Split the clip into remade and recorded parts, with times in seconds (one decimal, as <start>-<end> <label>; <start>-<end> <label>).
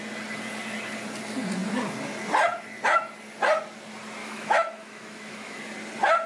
0.0-4.2 recorded; 4.2-5.6 remade; 5.6-6.3 recorded